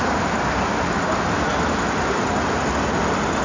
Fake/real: real